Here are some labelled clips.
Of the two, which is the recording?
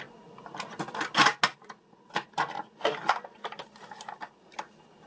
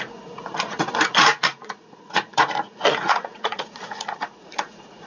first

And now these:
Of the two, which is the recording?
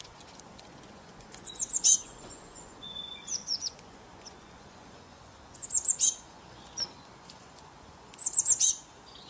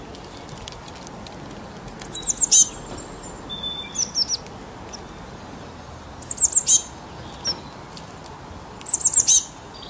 second